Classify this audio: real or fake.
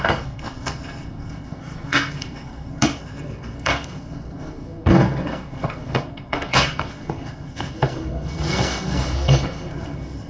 fake